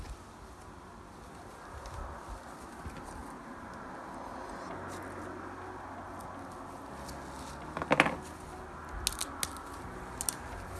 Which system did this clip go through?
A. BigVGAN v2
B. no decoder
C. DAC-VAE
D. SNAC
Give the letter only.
B